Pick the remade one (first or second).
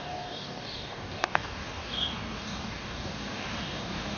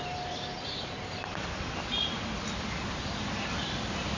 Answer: first